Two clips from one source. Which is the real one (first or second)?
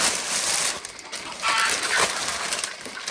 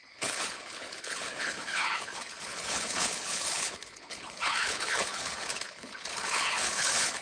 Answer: first